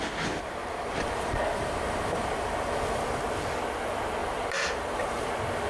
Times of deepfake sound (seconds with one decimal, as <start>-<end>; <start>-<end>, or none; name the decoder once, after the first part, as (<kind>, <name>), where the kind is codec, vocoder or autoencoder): 0.6-3.2 (vocoder, BigVGAN v2); 4.2-5.3